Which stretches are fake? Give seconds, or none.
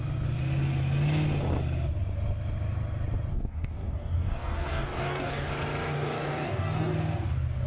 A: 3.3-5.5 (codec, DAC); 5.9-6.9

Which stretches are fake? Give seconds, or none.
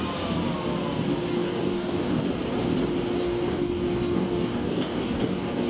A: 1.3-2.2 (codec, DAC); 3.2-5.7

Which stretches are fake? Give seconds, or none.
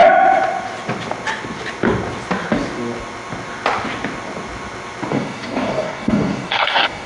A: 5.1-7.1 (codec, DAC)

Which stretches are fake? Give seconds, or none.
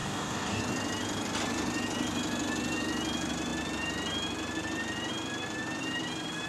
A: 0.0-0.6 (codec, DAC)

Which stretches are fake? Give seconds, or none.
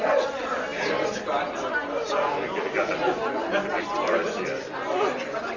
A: none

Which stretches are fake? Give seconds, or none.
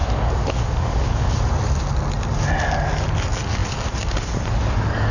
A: 0.0-1.3 (codec, DAC)